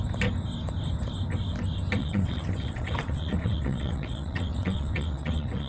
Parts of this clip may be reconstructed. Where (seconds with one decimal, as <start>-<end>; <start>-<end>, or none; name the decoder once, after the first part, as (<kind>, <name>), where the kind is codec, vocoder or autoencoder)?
2.0-5.7 (vocoder, WaveNeXt)